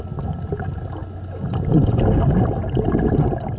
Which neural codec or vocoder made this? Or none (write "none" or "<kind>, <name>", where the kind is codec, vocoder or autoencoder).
none